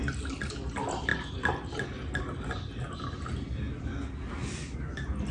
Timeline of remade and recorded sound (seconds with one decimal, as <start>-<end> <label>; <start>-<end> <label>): 0.0-5.3 recorded